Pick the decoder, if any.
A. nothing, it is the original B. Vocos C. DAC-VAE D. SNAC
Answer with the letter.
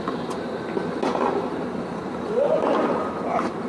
A